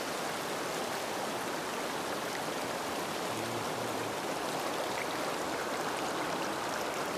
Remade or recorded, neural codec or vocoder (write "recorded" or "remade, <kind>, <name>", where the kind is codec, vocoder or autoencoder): recorded